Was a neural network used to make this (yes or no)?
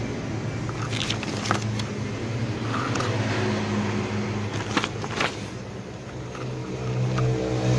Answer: no